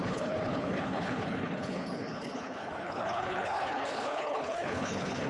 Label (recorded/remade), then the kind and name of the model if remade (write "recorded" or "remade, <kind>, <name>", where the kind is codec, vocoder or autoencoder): remade, codec, HILCodec